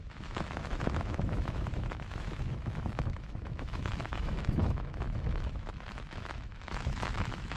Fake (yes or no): yes